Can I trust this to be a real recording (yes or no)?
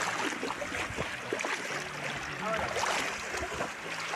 yes